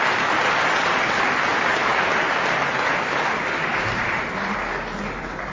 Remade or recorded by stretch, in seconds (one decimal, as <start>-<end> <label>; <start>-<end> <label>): 0.0-5.5 recorded